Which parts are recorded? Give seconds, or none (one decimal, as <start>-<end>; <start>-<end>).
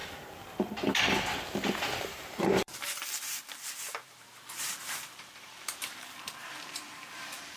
0.0-2.0